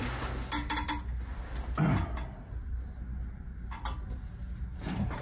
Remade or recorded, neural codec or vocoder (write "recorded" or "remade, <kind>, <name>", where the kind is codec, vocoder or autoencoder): recorded